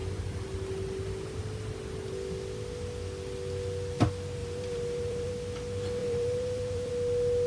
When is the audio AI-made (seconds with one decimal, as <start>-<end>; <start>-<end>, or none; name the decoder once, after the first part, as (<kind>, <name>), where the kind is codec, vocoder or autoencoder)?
4.4-5.3 (vocoder, BigVGAN v2); 6.0-6.9